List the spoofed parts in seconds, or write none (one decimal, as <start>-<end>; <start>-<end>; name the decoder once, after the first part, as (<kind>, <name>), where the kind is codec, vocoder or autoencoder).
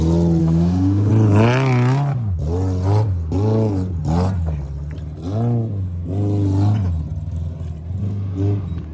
0.4-1.1 (autoencoder, DAC-VAE)